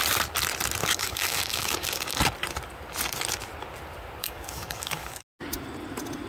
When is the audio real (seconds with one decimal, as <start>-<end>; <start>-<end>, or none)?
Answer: 0.0-0.8; 2.2-4.2; 5.2-6.3